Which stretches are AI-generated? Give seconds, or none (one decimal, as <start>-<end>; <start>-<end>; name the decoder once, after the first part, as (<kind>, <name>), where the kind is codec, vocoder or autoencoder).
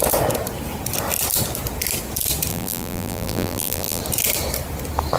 2.5-4.0 (vocoder, BigVGAN v2)